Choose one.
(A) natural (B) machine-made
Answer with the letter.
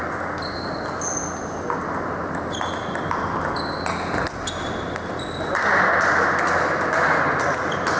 A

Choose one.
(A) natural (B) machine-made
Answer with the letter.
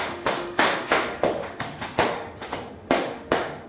B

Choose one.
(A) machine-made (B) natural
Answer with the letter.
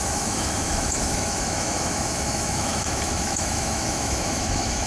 A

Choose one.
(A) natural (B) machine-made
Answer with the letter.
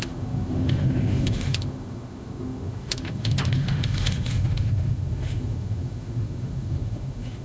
B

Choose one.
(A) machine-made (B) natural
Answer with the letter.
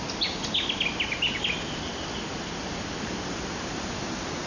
B